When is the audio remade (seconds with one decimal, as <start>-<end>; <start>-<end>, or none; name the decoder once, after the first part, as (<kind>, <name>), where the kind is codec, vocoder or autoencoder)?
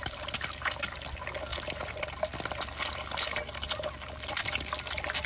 none